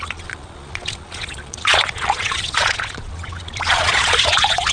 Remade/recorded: remade